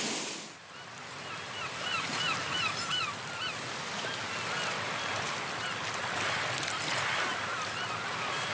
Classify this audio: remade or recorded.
recorded